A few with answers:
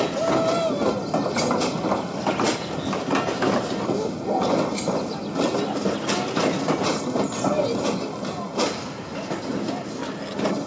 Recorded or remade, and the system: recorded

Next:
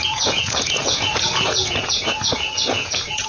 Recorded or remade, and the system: remade, vocoder, Vocos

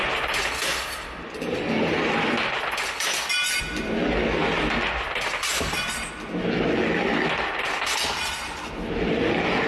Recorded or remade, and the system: recorded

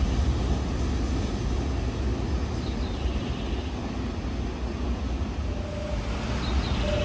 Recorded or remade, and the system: recorded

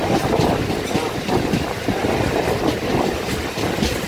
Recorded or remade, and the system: recorded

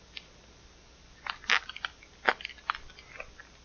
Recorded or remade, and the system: recorded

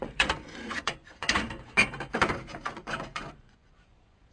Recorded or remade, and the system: remade, vocoder, Vocos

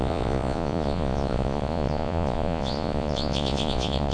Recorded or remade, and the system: remade, vocoder, Vocos